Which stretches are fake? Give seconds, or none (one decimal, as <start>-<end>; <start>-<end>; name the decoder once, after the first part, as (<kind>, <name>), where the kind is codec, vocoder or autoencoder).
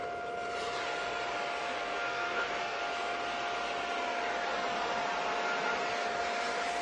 1.6-2.8 (codec, SNAC)